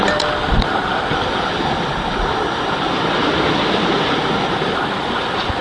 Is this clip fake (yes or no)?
no